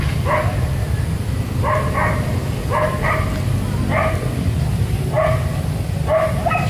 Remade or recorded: recorded